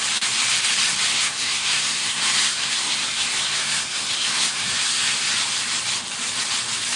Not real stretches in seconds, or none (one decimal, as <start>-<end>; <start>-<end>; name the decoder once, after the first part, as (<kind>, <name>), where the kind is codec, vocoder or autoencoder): 1.1-5.3 (codec, SNAC)